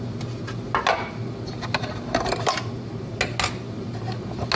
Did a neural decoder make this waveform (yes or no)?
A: no